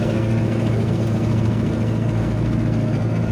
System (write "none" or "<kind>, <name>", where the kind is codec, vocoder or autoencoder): codec, SNAC